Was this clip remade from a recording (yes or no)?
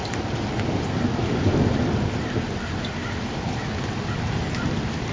no